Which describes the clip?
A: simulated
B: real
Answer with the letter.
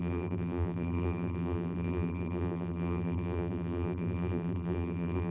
A